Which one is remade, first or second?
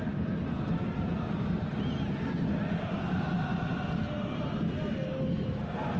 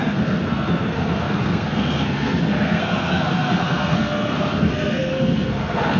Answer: second